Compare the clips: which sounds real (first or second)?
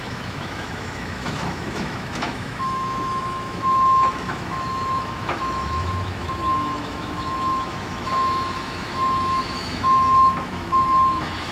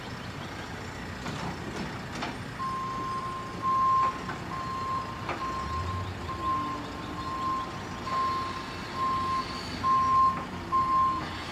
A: second